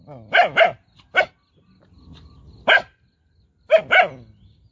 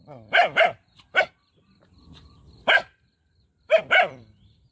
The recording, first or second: first